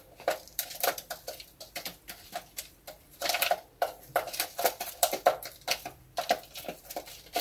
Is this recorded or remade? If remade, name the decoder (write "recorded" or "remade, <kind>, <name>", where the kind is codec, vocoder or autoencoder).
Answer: remade, vocoder, BigVGAN v2